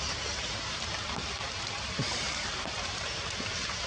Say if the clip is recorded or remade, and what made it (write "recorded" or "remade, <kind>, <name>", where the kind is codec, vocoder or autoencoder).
remade, vocoder, BigVGAN v2